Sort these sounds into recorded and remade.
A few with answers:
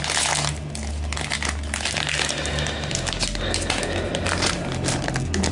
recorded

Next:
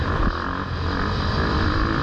recorded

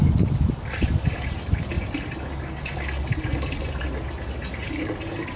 recorded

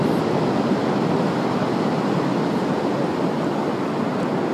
recorded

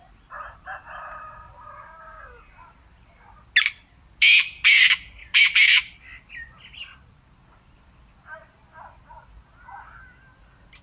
recorded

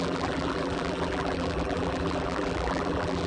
remade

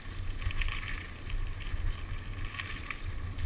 recorded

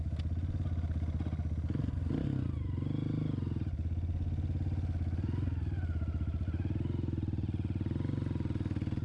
recorded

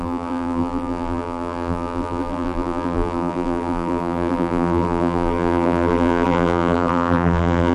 remade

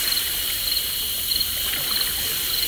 remade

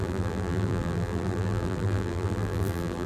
remade